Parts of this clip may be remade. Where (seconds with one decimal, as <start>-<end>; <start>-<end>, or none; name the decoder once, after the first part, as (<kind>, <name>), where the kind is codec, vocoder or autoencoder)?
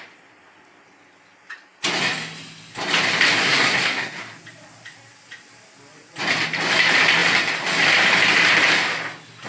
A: 3.4-4.3 (codec, SNAC)